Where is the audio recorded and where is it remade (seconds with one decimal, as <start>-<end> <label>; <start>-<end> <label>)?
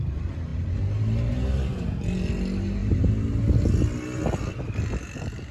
0.0-5.5 recorded